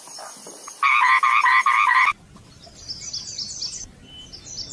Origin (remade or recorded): recorded